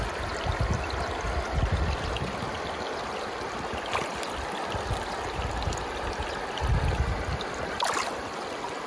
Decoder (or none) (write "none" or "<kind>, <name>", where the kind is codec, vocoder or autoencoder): none